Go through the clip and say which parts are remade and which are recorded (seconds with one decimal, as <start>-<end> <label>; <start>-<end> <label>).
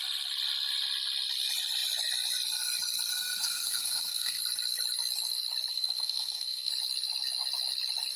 0.0-3.1 recorded; 3.1-4.4 remade; 4.4-5.7 recorded; 5.7-6.7 remade; 6.7-8.2 recorded